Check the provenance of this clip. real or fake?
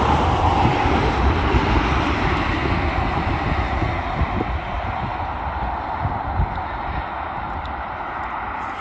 real